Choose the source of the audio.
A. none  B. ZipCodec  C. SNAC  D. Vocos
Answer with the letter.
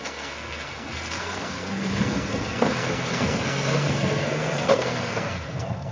C